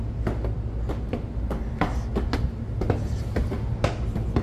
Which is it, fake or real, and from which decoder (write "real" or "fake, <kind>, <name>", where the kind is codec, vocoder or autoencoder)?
real